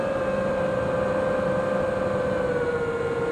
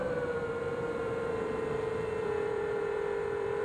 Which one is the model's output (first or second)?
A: second